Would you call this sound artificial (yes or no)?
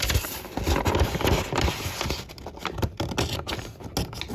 no